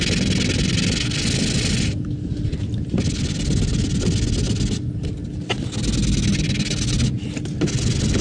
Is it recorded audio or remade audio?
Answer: recorded